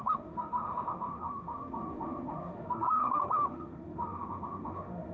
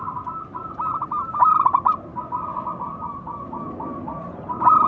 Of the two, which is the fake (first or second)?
first